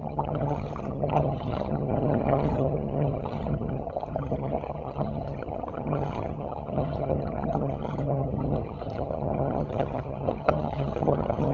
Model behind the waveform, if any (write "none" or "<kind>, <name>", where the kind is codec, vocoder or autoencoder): vocoder, HiFi-GAN